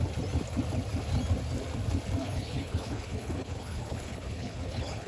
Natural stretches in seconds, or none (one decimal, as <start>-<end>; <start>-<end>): 0.0-2.2